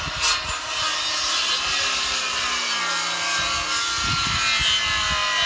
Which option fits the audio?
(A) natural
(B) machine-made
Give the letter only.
A